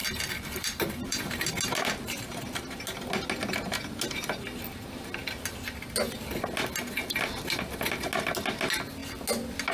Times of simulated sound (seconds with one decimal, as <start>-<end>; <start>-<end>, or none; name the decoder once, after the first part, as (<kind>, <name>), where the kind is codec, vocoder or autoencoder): 0.0-1.5 (vocoder, BigVGAN v2)